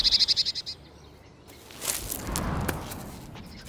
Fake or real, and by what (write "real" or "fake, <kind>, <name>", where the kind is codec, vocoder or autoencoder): real